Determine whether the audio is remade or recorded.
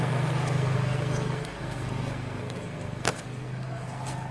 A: remade